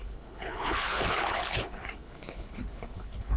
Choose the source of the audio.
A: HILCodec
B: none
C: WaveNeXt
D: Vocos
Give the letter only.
A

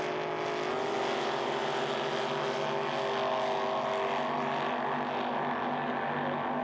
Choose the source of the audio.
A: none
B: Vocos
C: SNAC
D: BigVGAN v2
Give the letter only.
A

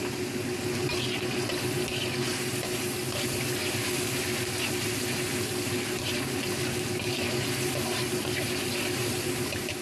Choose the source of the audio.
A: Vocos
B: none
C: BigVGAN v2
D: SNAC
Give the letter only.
B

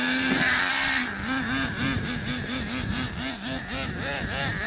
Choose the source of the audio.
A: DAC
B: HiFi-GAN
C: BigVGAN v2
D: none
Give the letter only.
D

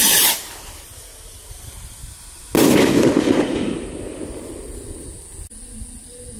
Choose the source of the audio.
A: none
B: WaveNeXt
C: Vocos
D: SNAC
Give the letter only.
A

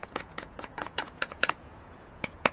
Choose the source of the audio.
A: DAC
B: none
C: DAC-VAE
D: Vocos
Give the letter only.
D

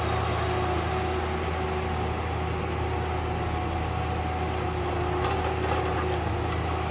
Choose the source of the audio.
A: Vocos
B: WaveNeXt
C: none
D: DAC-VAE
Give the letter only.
C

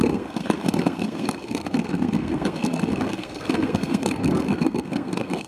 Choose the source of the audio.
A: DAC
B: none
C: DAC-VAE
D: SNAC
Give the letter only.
D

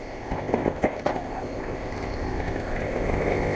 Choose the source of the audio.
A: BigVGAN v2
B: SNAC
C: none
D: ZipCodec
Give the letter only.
D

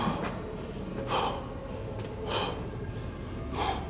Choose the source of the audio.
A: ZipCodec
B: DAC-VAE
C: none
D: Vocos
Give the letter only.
C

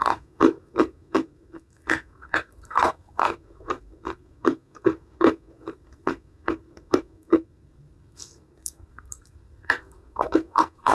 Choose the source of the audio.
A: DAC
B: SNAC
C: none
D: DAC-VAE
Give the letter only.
B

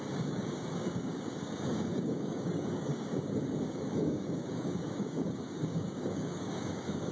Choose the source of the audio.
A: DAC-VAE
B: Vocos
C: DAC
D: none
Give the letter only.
C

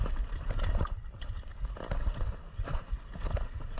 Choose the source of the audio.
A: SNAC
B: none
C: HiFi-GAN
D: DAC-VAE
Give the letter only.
B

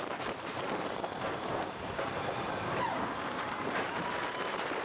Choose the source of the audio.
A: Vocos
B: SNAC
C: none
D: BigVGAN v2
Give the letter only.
D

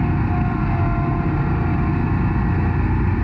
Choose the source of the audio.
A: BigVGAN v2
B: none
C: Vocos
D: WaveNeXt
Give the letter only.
B